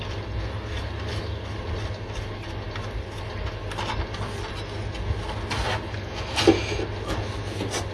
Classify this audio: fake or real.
real